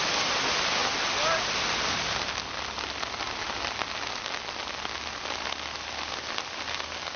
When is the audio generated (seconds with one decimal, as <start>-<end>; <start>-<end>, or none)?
none